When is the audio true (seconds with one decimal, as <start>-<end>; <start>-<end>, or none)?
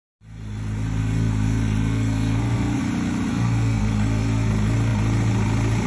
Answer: 0.0-1.0; 2.8-3.3; 4.5-5.9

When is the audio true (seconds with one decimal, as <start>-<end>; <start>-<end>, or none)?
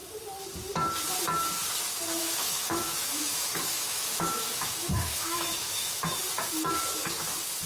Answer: 0.0-2.2; 6.2-7.7